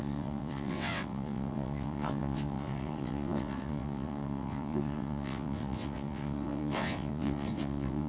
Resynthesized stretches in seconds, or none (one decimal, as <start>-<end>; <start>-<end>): 0.0-8.1